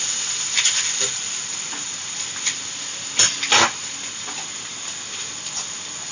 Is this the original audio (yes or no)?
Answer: yes